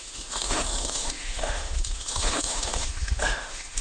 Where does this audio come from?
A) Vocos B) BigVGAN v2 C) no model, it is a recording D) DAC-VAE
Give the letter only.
D